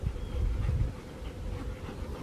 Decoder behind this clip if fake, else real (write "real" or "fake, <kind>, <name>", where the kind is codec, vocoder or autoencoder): real